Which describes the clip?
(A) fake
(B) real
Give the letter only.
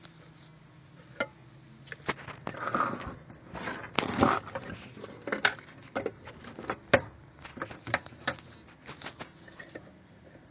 B